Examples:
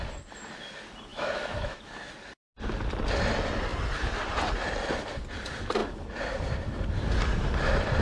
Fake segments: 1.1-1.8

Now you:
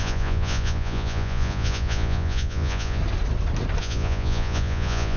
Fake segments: 0.0-3.0; 3.8-5.2

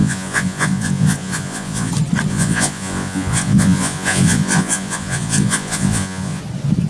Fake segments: 0.0-1.9; 2.3-6.4

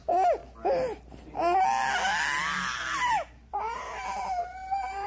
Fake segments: 0.0-0.4; 3.5-5.1

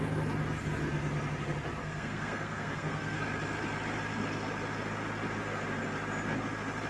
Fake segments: 1.8-3.2

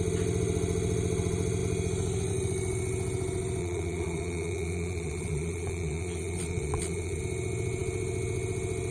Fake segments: 3.6-7.2